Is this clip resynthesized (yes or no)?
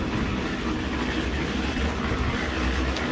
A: no